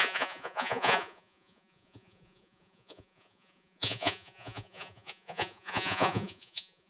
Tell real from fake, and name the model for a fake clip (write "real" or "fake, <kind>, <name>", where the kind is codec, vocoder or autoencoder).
fake, vocoder, Vocos